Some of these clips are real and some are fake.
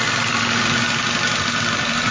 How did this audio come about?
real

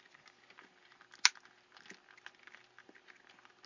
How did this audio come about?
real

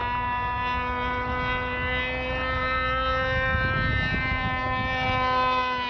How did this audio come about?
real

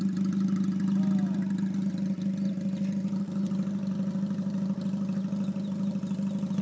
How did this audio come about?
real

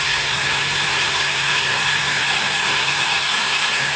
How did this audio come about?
fake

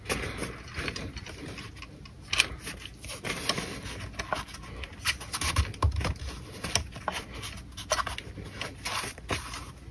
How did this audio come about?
real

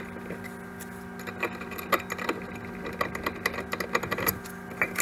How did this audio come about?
real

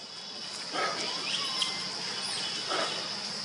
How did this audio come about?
real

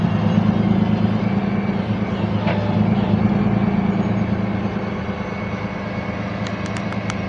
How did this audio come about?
real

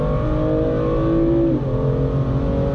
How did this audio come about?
real